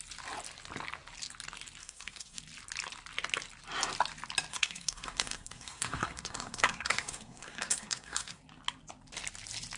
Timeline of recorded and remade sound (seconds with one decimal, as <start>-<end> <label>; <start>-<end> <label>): 0.0-1.8 recorded; 1.8-2.4 remade; 2.4-4.5 recorded; 4.5-8.4 remade; 8.4-9.8 recorded